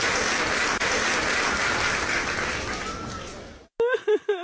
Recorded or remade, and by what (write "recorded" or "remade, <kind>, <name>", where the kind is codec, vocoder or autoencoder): recorded